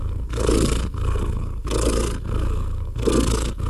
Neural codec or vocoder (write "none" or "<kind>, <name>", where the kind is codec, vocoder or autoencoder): codec, SNAC